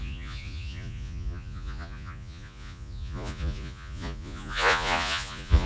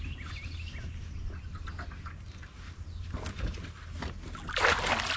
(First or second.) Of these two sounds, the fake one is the first